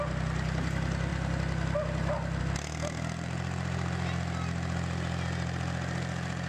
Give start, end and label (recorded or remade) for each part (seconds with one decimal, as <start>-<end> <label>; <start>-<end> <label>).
0.0-6.5 recorded